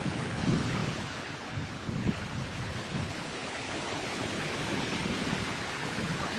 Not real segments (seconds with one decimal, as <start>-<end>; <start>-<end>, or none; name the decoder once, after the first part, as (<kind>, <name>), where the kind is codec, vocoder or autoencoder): 0.0-6.4 (codec, HILCodec)